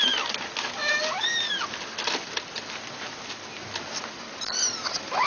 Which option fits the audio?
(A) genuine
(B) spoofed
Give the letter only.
A